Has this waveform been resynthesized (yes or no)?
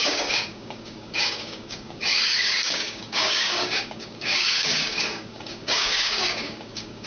yes